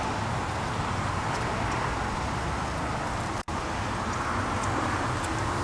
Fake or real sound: real